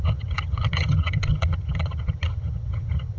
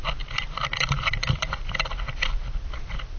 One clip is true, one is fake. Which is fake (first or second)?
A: first